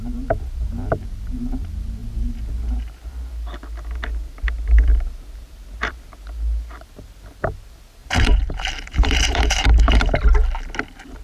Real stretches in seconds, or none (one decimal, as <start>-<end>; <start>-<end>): 0.0-8.0; 10.2-11.2